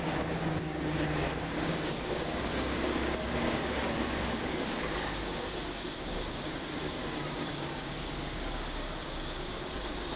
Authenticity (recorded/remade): remade